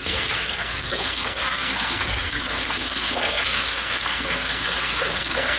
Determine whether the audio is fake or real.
fake